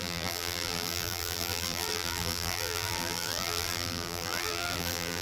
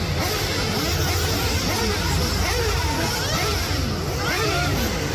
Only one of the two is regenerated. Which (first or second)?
first